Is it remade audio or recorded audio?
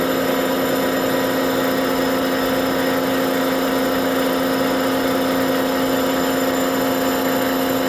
recorded